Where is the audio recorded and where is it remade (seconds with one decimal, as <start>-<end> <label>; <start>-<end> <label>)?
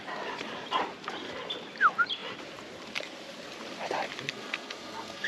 0.0-4.3 recorded; 4.3-5.3 remade